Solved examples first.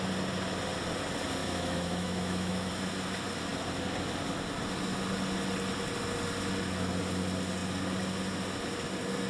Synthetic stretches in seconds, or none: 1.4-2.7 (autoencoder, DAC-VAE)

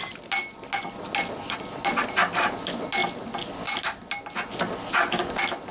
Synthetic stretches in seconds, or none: none

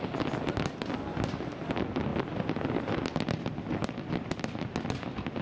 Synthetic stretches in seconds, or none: none